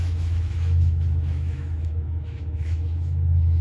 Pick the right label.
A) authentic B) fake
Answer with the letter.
B